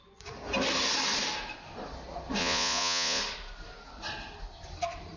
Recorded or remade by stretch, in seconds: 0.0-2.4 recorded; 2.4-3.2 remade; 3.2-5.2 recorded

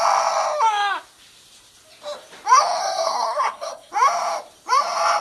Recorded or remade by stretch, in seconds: 0.0-2.8 recorded; 2.8-3.9 remade; 3.9-5.2 recorded

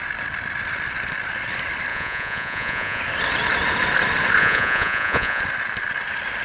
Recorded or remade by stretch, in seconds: 0.0-1.9 recorded; 1.9-3.0 remade; 3.0-4.4 recorded; 4.4-5.4 remade; 5.4-6.4 recorded

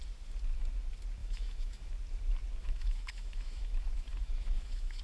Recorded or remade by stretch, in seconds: 0.0-1.2 recorded; 1.2-1.9 remade; 1.9-2.6 recorded; 2.6-5.0 remade

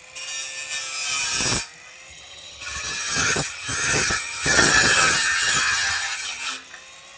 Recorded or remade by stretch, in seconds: 0.0-2.1 recorded; 2.1-6.4 remade; 6.4-7.2 recorded

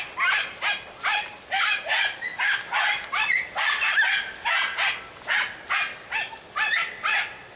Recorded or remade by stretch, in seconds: 0.0-7.6 recorded

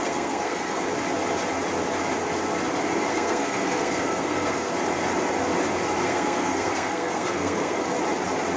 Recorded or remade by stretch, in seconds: 0.0-0.8 remade; 0.8-3.1 recorded; 3.1-4.7 remade; 4.7-6.0 recorded; 6.0-7.8 remade; 7.8-8.6 recorded